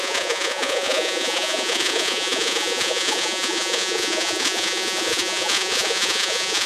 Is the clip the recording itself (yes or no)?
no